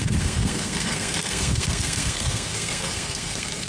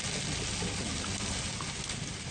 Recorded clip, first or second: second